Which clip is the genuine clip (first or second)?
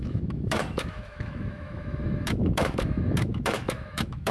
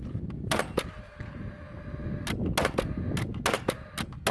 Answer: second